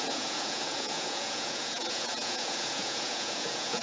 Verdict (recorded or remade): remade